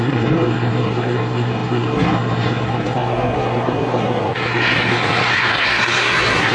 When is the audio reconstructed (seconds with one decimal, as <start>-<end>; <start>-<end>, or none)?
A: 0.0-6.5